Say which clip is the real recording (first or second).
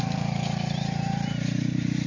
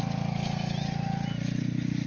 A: second